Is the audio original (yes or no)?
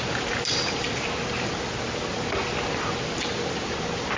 yes